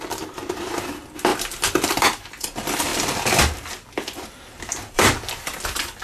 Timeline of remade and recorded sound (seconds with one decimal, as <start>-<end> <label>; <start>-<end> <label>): 0.0-2.9 remade; 2.9-3.9 recorded; 3.9-6.0 remade

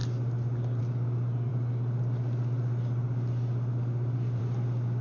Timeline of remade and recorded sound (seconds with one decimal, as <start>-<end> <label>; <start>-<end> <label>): 0.0-5.0 recorded

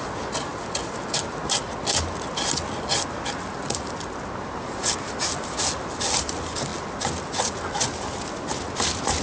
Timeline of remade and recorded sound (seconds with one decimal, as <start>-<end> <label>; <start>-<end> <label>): 0.0-9.2 recorded